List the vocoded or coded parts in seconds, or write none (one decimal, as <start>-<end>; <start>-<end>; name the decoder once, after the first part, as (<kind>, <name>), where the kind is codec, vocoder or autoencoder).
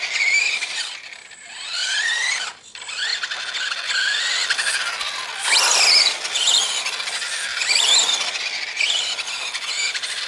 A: 7.5-8.7 (vocoder, BigVGAN v2)